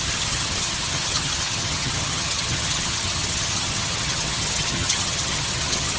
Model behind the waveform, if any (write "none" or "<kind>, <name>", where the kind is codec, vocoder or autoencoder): vocoder, HiFi-GAN